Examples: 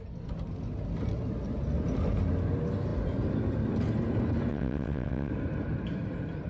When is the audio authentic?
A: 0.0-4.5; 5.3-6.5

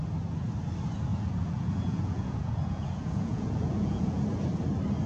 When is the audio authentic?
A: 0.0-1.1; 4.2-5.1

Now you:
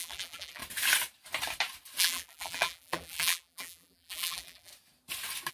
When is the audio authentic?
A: 0.6-2.0; 4.7-5.5

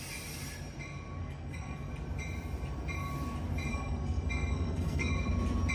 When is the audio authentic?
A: 0.0-1.2; 1.9-3.7; 5.1-5.7

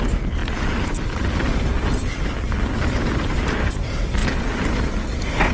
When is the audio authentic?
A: 0.0-0.4; 3.7-4.2; 4.7-5.5

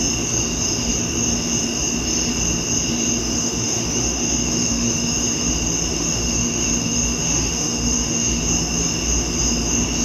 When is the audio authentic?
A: 0.0-3.2; 5.5-5.9; 8.4-10.0

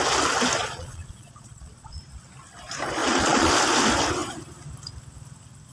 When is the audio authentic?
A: 0.0-0.6; 2.0-3.0; 3.5-5.7